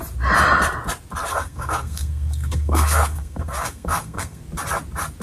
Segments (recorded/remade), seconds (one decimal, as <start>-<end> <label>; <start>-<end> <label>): 0.0-1.3 recorded; 1.3-4.4 remade; 4.4-5.2 recorded